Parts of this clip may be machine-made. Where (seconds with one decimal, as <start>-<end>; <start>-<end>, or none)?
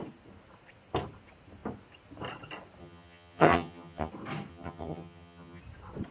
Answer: 2.8-4.1; 4.5-5.6